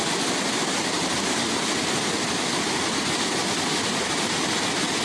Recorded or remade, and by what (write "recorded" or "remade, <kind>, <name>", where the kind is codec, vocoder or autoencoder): recorded